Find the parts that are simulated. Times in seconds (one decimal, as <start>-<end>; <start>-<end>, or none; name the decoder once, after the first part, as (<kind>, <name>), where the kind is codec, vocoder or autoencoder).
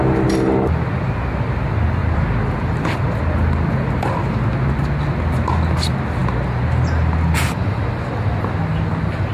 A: 2.0-3.1 (vocoder, BigVGAN v2)